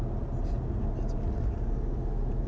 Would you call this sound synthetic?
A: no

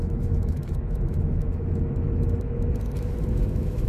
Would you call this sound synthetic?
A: yes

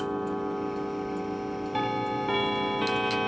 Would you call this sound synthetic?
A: no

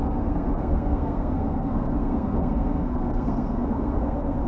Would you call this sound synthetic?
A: yes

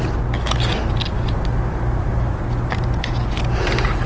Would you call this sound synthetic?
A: no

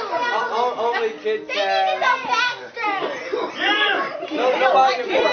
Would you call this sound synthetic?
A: no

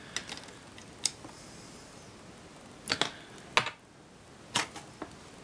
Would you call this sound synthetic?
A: no